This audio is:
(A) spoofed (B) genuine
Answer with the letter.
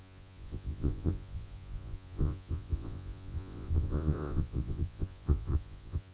A